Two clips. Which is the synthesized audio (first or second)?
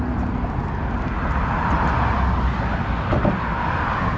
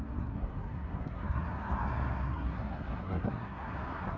second